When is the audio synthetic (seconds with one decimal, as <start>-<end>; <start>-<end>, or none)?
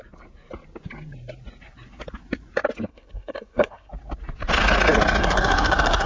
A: 2.9-3.9; 5.2-6.1